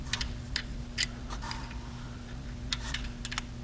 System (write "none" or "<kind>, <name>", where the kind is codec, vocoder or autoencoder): none